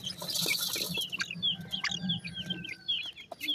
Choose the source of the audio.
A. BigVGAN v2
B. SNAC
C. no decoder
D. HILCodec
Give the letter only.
C